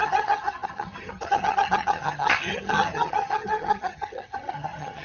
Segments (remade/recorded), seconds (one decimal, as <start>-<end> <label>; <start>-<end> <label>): 0.0-5.0 remade